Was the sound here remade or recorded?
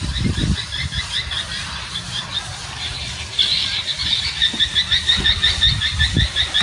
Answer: recorded